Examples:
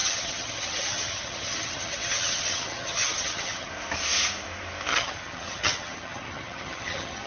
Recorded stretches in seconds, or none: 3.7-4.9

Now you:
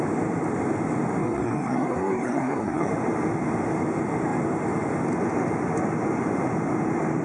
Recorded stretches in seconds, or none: 0.0-1.2; 2.9-7.2

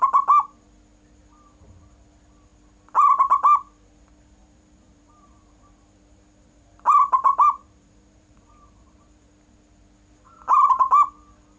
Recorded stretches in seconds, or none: 0.0-4.4; 9.3-11.6

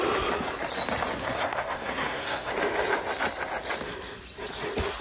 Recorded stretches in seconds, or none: 0.0-1.2; 2.5-5.0